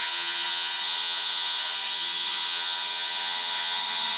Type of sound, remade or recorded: remade